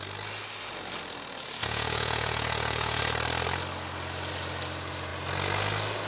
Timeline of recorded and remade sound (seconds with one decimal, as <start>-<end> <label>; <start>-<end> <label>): 0.0-1.6 recorded; 1.6-3.0 remade; 3.0-6.1 recorded